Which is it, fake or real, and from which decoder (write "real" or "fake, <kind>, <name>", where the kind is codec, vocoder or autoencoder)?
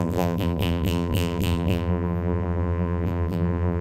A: fake, vocoder, BigVGAN v2